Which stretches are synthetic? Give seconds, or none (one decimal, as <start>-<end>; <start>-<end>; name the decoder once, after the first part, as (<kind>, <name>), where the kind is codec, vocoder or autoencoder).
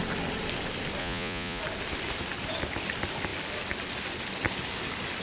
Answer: 1.0-1.6 (vocoder, Vocos)